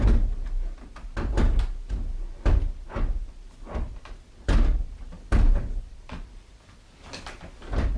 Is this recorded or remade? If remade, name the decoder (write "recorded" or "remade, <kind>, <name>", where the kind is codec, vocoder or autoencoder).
recorded